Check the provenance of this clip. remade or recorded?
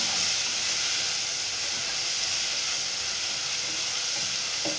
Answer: recorded